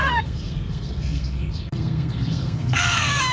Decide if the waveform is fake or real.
fake